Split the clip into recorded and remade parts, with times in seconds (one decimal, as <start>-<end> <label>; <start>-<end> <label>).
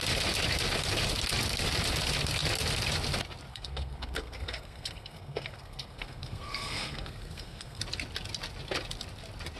0.0-3.5 recorded; 3.5-7.8 remade; 7.8-9.6 recorded